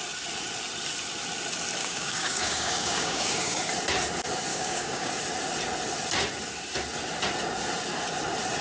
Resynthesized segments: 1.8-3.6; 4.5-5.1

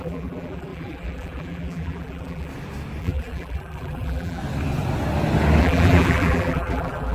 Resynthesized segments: 0.0-2.5; 3.0-4.4; 5.6-7.1

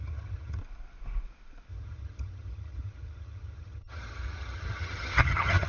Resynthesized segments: 0.0-0.6; 1.7-5.7